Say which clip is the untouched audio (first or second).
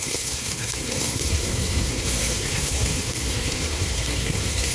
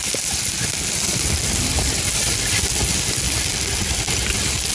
second